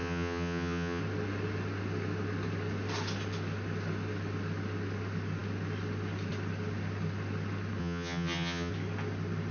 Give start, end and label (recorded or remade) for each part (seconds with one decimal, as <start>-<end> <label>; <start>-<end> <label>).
0.0-1.0 remade; 1.0-7.8 recorded; 7.8-8.7 remade; 8.7-9.5 recorded